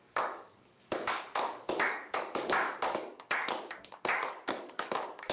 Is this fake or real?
fake